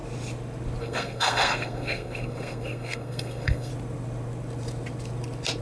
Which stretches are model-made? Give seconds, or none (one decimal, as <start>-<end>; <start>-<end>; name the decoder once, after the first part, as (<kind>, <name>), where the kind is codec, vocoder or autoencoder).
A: 0.8-3.7 (codec, SNAC)